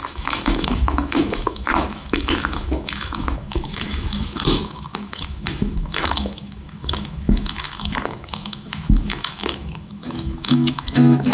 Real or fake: fake